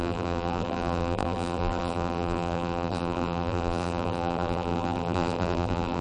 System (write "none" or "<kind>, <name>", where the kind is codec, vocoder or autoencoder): vocoder, BigVGAN v2